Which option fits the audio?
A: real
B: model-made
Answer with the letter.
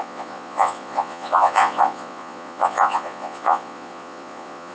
B